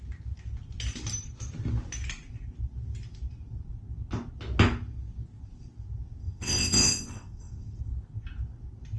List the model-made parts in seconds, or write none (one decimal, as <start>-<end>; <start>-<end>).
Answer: 6.2-7.8